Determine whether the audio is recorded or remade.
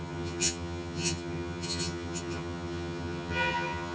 remade